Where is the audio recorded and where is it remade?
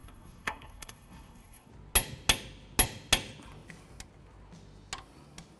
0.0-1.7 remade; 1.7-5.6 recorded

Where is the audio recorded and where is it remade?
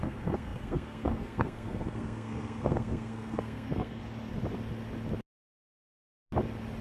0.0-4.0 remade; 4.0-6.8 recorded